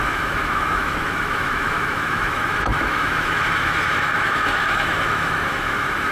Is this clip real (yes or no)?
no